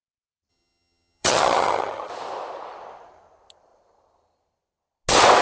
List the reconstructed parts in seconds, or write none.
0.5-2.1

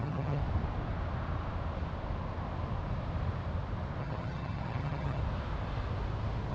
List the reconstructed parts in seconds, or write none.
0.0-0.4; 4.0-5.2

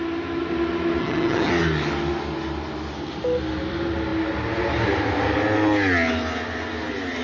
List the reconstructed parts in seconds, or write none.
1.0-1.5

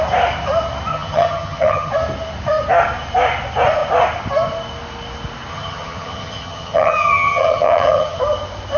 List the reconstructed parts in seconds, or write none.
0.9-1.9; 5.5-8.2

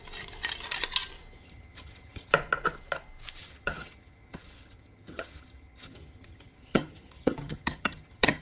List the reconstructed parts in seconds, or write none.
1.4-2.3; 3.4-8.4

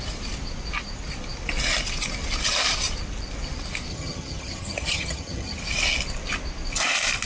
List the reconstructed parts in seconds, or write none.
3.9-5.6